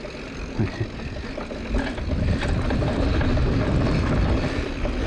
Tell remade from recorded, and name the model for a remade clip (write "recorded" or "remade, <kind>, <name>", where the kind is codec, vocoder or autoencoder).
recorded